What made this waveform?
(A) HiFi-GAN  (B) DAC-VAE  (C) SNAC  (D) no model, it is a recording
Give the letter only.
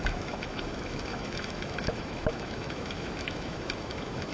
B